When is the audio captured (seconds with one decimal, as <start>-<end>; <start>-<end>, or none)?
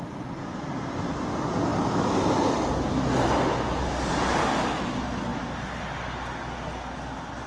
0.0-7.5